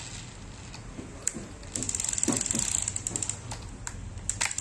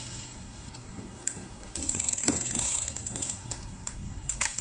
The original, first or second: first